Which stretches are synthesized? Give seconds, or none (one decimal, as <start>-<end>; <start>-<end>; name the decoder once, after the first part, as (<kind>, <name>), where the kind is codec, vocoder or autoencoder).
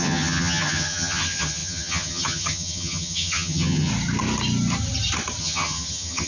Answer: 0.0-3.9 (vocoder, HiFi-GAN); 5.4-6.3